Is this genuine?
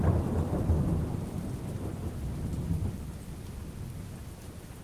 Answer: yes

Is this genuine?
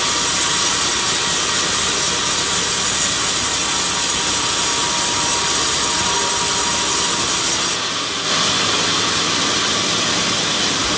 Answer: yes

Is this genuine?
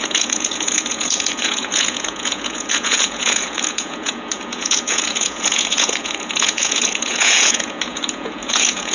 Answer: no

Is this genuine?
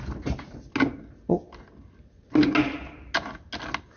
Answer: yes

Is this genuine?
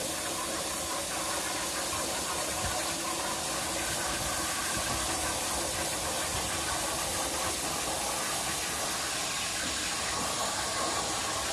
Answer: yes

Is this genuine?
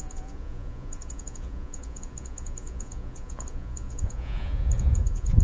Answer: no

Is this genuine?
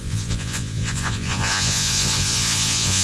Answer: no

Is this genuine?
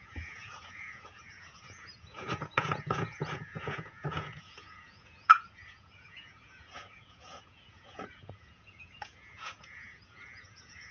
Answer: no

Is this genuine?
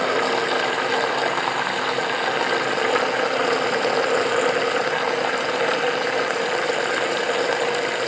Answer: yes